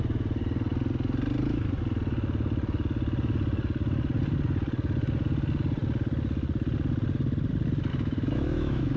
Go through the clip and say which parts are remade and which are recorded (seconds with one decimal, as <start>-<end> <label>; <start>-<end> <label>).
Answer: 0.0-7.9 recorded; 7.9-9.0 remade

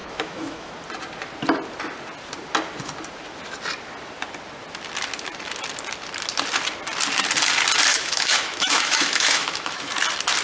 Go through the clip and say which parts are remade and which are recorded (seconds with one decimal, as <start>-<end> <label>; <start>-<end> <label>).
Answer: 0.0-0.7 remade; 0.7-7.9 recorded; 7.9-9.9 remade; 9.9-10.4 recorded